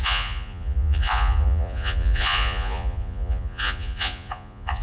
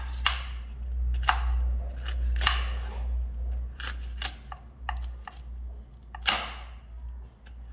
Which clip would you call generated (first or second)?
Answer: first